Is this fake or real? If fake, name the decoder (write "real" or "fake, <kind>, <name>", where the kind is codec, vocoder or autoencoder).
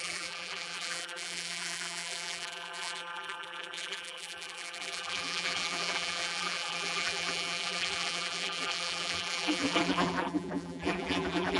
fake, vocoder, BigVGAN v2